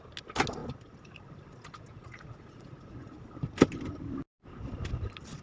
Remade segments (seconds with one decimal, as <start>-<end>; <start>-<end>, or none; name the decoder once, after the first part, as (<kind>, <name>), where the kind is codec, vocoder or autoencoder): 1.9-3.1 (vocoder, Vocos)